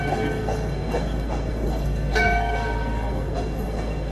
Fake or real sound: fake